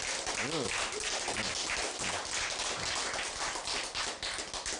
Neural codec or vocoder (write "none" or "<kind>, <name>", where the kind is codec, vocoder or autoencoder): none